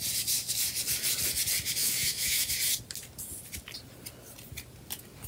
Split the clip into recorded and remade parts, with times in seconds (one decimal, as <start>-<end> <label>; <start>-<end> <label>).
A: 0.0-1.8 recorded; 1.8-2.5 remade; 2.5-5.3 recorded